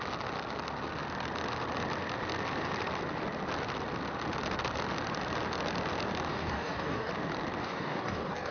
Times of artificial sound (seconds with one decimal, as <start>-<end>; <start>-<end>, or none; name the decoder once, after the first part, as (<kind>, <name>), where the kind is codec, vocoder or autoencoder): 6.3-7.1 (codec, DAC); 7.6-8.5